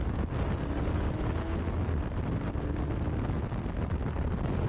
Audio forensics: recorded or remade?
recorded